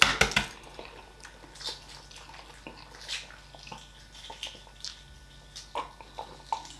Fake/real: real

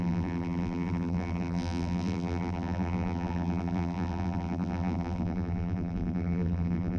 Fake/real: fake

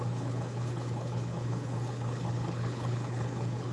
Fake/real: fake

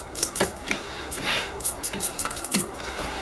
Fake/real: fake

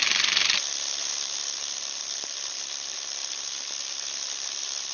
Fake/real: fake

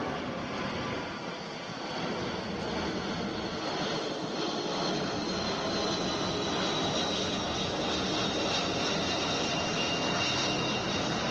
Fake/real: real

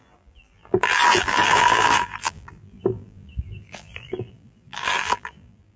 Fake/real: fake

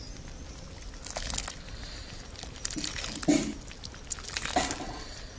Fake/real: real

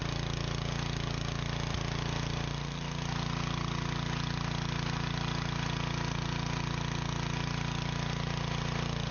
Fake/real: real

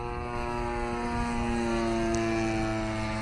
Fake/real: real